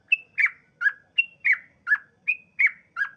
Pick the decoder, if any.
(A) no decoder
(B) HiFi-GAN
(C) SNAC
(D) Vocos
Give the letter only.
A